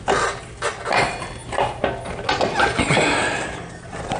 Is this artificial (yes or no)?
no